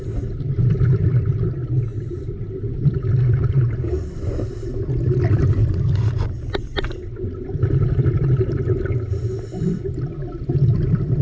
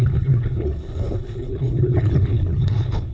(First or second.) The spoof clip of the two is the second